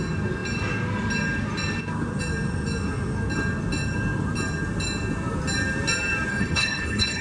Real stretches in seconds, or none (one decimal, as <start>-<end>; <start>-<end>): 0.0-6.3